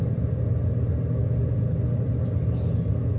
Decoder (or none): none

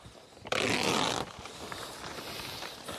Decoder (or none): none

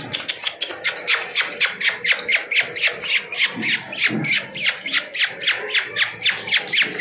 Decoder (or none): none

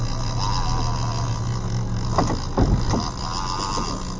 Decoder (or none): none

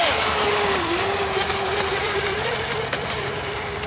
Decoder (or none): none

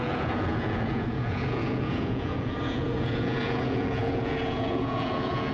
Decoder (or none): vocoder, Vocos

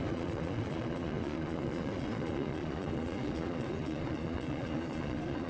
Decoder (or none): vocoder, Vocos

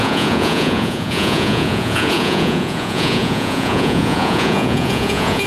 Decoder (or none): vocoder, Vocos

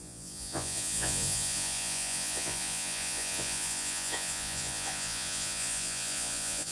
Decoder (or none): vocoder, Vocos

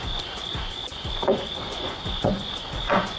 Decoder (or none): vocoder, Vocos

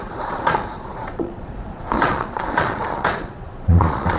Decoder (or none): vocoder, Vocos